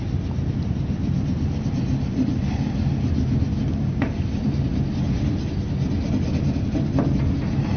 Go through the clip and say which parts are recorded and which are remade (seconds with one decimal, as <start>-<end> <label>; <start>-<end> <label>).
0.0-7.8 remade